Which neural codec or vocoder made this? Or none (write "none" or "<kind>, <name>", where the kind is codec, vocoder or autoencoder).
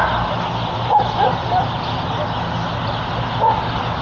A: none